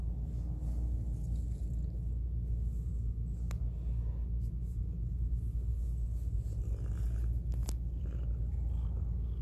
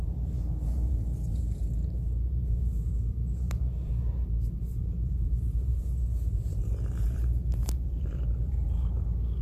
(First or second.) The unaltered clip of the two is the first